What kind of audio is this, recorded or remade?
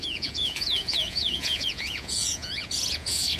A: remade